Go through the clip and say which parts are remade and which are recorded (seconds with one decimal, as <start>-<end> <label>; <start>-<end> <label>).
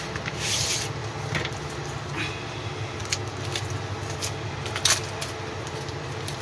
0.0-6.4 recorded